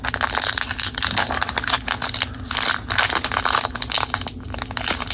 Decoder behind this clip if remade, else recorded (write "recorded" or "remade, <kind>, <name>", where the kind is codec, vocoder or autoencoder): recorded